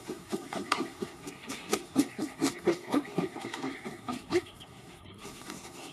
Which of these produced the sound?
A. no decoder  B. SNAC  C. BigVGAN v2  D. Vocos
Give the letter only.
B